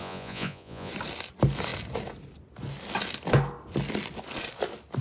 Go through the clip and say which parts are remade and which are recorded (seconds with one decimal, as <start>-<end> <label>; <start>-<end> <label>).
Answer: 0.0-0.9 remade; 0.9-5.0 recorded